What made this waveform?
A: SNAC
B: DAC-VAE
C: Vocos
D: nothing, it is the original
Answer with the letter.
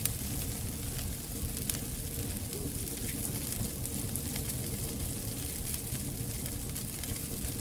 D